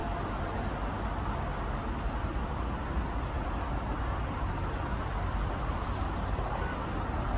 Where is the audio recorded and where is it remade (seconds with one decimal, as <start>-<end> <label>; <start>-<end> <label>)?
0.0-7.4 recorded